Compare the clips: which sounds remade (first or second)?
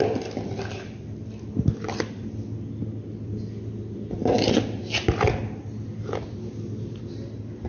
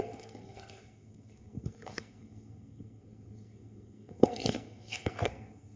second